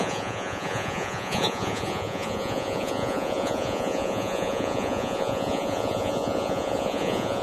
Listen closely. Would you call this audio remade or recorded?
remade